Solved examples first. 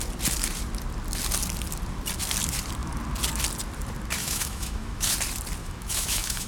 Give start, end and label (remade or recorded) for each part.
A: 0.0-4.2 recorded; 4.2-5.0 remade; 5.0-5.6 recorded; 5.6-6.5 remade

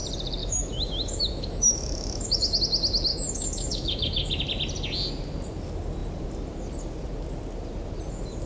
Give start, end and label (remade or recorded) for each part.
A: 0.0-0.4 recorded; 0.4-2.6 remade; 2.6-3.1 recorded; 3.1-4.4 remade; 4.4-8.5 recorded